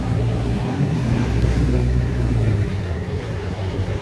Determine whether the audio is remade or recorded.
remade